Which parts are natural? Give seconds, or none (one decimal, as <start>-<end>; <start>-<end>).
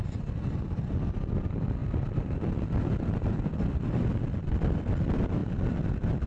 0.0-6.3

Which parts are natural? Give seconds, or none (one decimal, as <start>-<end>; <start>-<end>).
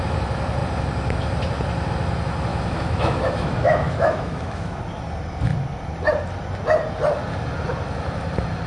0.0-2.5; 4.8-8.7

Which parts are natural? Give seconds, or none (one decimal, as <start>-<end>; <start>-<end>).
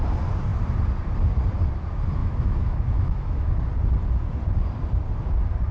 0.0-2.2; 3.5-5.7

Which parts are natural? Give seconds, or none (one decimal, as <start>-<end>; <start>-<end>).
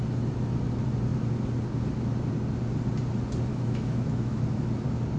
0.0-3.5; 4.4-5.2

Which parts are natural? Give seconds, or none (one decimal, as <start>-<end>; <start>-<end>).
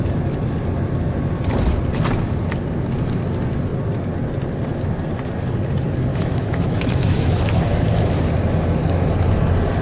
0.0-6.1; 8.1-9.8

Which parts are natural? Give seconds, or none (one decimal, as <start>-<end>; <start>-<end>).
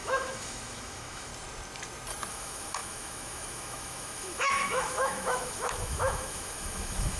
1.3-2.3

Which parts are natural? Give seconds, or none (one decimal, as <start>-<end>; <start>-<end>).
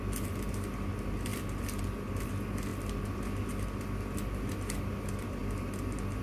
0.0-6.2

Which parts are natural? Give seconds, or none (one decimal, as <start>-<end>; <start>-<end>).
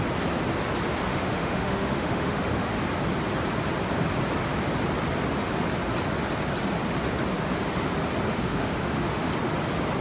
0.0-1.1; 2.7-8.3; 9.3-10.0